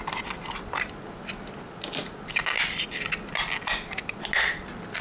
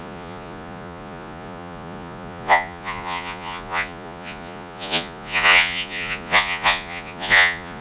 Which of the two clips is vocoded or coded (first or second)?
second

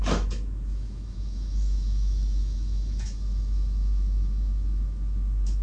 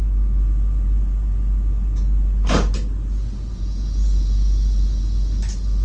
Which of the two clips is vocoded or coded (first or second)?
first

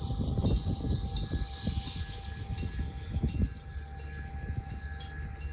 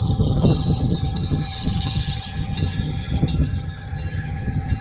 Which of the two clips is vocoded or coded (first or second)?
second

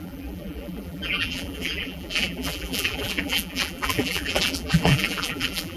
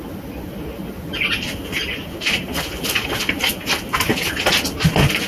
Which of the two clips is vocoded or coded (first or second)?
first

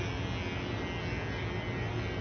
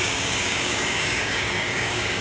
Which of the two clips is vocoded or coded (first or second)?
second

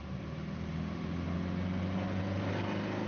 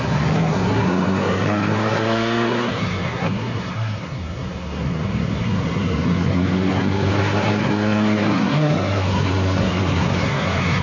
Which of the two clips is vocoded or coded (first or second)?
second